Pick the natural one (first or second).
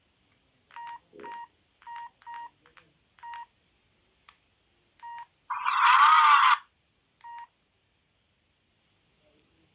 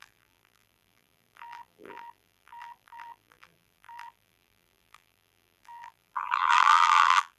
first